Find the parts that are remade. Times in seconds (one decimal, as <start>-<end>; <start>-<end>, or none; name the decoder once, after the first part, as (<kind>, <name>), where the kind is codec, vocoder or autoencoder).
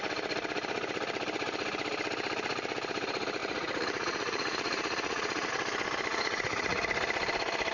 3.4-5.5 (vocoder, Vocos); 6.1-6.8